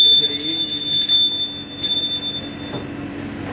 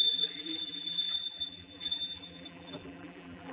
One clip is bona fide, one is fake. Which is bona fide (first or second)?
first